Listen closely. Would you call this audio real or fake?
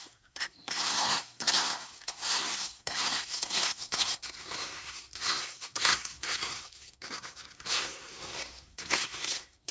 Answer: fake